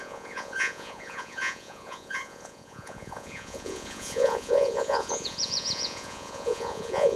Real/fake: fake